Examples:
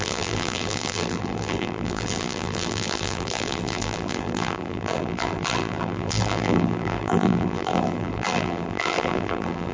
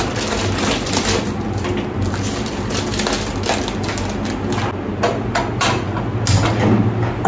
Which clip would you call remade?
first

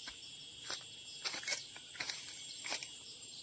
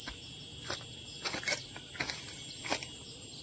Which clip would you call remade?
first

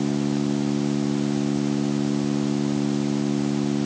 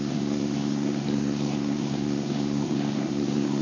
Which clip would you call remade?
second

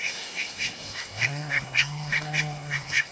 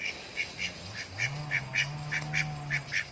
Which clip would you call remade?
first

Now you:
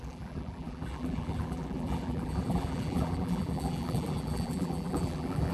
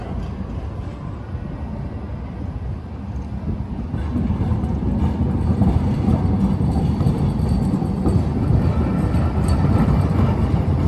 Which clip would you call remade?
first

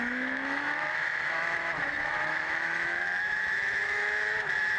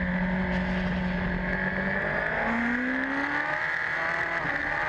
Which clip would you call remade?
first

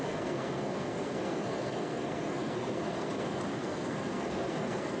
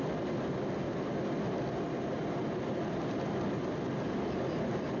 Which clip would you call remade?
first